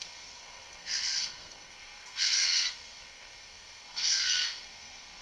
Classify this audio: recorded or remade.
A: remade